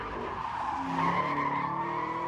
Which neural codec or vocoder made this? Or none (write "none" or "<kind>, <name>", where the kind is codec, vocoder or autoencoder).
none